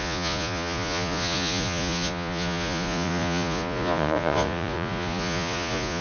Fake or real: fake